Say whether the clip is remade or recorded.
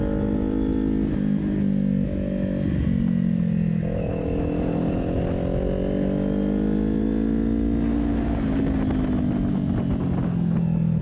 recorded